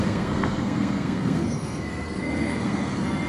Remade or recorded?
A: remade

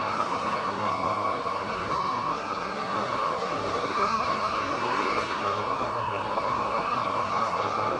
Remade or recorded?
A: remade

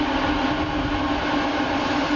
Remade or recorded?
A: recorded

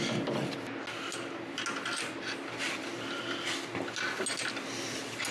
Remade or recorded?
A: recorded